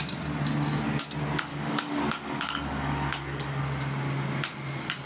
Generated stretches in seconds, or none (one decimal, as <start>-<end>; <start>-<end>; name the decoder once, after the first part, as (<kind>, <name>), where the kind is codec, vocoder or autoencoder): 1.5-3.6 (codec, DAC)